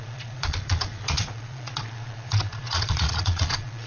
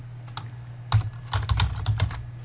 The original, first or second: second